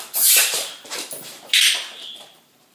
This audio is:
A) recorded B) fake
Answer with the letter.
B